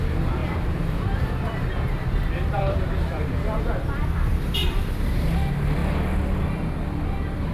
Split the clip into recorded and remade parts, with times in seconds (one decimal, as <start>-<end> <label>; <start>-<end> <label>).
0.0-0.4 recorded; 0.4-4.9 remade; 4.9-7.5 recorded